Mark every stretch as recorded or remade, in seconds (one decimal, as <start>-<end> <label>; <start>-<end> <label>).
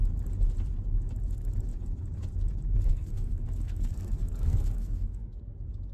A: 0.0-2.9 recorded; 2.9-5.4 remade; 5.4-5.9 recorded